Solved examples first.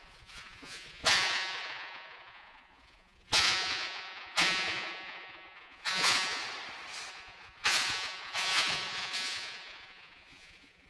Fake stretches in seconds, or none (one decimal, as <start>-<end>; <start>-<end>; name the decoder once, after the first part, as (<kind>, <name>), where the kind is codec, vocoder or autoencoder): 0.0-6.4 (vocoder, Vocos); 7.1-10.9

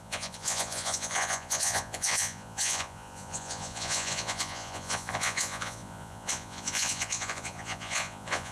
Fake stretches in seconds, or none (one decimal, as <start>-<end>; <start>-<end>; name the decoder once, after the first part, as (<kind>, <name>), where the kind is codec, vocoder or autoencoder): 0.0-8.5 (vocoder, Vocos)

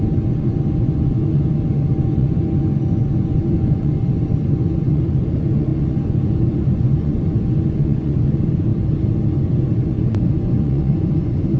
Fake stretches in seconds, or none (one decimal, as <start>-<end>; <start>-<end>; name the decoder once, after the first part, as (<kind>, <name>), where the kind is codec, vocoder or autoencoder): 0.0-8.7 (vocoder, Vocos); 9.3-11.6